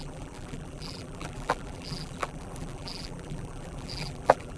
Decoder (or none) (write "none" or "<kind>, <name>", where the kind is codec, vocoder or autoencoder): vocoder, BigVGAN v2